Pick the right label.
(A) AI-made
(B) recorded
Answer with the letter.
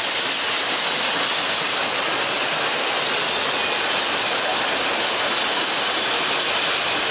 B